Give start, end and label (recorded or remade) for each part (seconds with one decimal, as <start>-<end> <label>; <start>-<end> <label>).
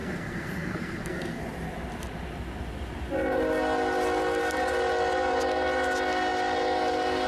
0.0-1.4 remade; 1.4-7.3 recorded